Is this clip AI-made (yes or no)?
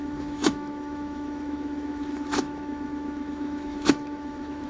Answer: yes